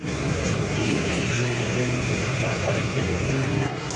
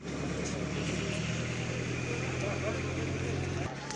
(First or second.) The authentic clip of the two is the second